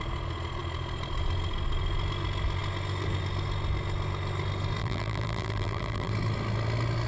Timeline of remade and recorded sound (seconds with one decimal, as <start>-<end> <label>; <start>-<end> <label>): 0.0-4.8 recorded; 4.8-6.1 remade; 6.1-7.1 recorded